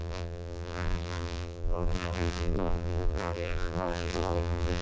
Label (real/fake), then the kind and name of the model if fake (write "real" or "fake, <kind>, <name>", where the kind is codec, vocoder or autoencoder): fake, vocoder, BigVGAN v2